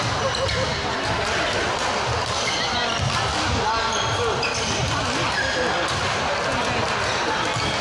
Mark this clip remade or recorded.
recorded